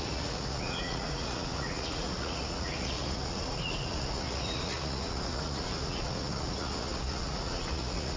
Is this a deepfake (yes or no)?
yes